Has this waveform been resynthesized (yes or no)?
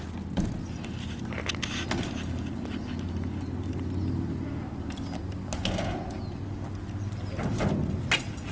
no